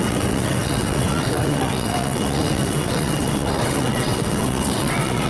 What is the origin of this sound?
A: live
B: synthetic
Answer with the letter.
B